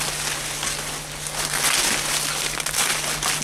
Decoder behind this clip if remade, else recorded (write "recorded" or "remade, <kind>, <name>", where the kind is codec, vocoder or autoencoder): recorded